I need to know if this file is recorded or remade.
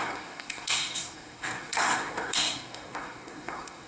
remade